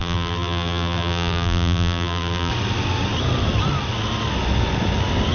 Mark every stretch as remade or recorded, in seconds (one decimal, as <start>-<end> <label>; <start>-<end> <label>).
0.0-2.5 remade; 2.5-5.3 recorded